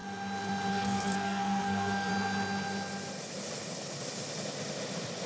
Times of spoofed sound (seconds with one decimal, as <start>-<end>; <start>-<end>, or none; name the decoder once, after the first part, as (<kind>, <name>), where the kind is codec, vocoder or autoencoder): 0.7-2.1 (codec, SNAC)